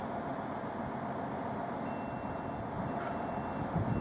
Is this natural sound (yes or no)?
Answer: yes